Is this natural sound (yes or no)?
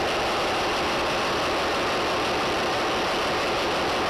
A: yes